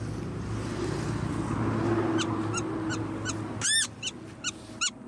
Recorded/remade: recorded